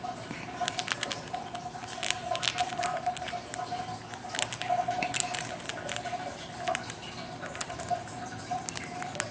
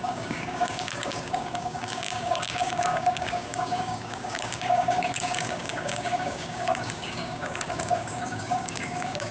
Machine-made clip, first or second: second